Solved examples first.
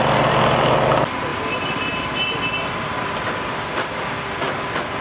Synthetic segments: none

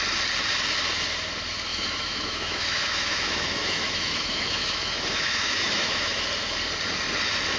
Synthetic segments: 1.7-6.2 (autoencoder, DAC-VAE)